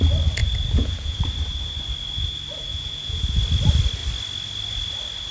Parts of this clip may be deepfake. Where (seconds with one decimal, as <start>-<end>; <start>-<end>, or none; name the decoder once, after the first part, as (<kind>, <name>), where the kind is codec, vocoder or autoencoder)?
0.4-1.2 (vocoder, Vocos); 2.7-3.4